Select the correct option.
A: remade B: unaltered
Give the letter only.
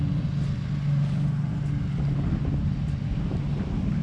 B